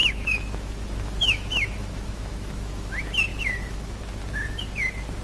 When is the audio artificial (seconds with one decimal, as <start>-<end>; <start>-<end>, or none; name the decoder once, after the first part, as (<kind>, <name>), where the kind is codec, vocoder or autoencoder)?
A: 0.0-2.9 (autoencoder, DAC-VAE); 3.3-4.0